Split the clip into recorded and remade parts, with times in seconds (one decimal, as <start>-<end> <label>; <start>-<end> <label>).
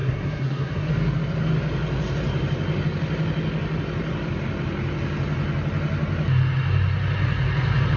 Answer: 0.0-0.9 remade; 0.9-8.0 recorded